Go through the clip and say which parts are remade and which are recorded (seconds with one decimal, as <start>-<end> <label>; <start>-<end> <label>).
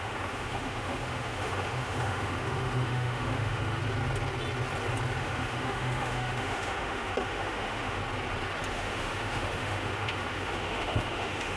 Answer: 0.0-3.8 remade; 3.8-5.2 recorded; 5.2-8.0 remade; 8.0-8.7 recorded; 8.7-11.6 remade